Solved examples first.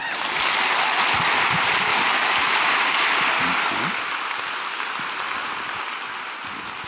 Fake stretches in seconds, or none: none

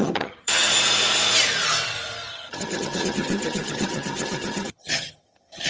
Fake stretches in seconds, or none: 0.0-0.7 (vocoder, HiFi-GAN); 2.3-5.7